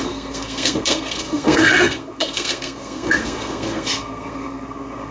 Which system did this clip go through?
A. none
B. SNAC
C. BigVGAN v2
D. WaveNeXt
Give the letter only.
B